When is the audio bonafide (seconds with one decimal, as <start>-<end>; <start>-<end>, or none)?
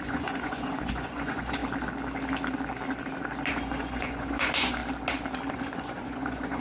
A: 1.6-3.5; 4.8-5.5